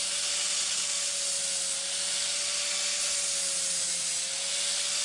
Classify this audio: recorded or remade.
recorded